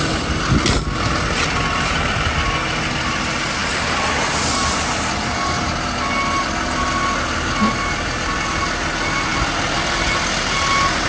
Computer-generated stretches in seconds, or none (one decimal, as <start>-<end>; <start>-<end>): 3.6-4.1; 9.3-10.7